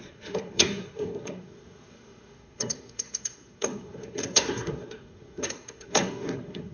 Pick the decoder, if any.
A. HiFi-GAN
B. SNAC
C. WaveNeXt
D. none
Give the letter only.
B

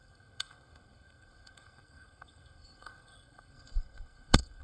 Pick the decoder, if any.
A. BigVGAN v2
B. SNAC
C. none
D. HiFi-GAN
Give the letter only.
B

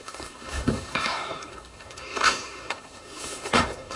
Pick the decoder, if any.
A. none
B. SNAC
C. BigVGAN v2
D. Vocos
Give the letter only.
B